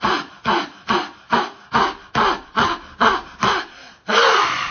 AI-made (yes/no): no